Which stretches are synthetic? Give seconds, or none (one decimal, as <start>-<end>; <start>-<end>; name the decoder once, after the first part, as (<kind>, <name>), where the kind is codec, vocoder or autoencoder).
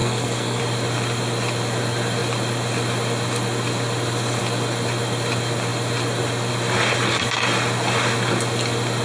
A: 0.0-0.6 (codec, SNAC)